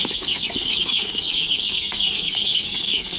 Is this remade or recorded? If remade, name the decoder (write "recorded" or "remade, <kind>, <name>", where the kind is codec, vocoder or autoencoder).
remade, codec, SNAC